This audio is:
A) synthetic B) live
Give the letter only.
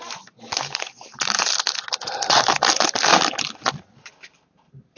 B